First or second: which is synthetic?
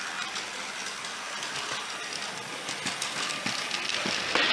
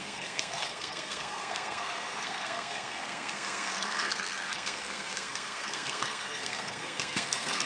second